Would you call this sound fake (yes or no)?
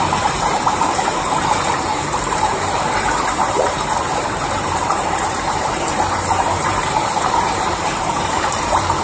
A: yes